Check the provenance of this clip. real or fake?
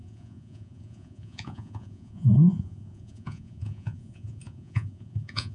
fake